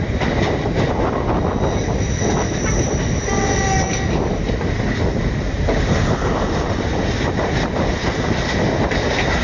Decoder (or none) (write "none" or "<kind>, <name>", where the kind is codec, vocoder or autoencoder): none